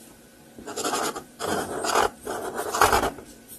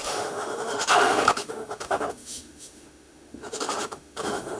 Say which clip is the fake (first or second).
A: second